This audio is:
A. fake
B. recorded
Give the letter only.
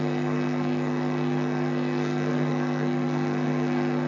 A